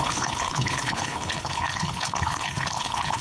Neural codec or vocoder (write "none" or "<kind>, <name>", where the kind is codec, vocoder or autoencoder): codec, HILCodec